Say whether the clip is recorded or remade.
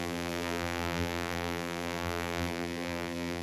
remade